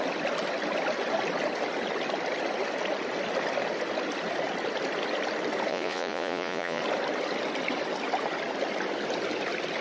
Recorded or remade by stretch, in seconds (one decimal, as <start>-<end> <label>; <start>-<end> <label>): 0.0-5.7 recorded; 5.7-6.8 remade; 6.8-9.8 recorded